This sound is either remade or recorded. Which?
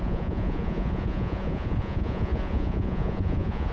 remade